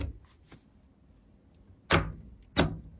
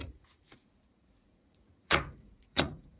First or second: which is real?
first